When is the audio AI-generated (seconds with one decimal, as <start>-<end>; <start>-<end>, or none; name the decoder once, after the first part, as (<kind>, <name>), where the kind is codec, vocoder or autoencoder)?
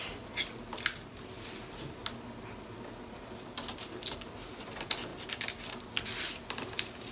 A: none